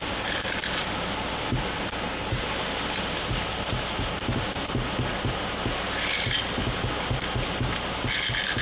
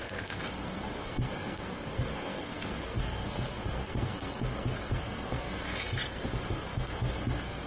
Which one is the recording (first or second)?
first